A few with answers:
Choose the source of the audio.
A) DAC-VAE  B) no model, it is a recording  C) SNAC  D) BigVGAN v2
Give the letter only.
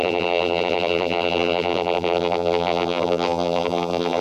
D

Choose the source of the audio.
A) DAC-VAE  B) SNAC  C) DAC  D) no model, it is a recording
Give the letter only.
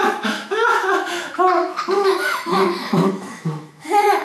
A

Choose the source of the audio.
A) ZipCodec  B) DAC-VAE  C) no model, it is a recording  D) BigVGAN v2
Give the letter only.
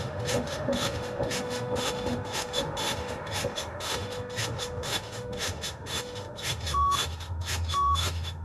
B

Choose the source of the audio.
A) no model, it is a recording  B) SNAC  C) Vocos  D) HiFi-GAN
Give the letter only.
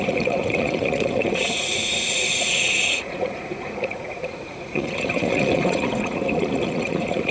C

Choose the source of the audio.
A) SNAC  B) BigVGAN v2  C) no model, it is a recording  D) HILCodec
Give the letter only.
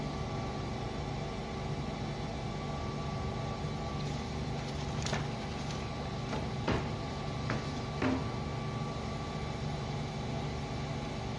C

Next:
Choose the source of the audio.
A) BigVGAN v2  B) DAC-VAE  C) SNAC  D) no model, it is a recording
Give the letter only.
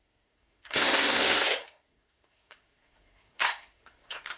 C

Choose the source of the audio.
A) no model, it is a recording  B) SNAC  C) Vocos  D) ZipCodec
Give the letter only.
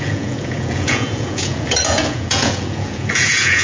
C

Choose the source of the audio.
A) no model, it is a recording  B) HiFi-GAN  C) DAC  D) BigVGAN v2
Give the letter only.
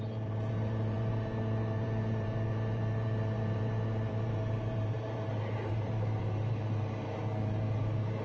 D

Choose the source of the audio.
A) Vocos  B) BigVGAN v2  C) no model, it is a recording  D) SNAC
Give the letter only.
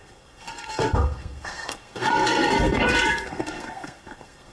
D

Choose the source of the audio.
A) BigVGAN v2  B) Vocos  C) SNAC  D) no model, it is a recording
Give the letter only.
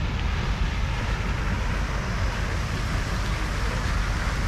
D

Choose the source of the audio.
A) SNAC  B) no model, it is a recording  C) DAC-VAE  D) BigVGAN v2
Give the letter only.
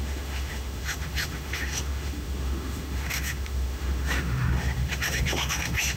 C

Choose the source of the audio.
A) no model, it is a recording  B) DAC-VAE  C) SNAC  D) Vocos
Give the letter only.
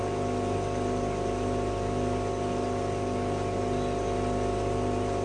A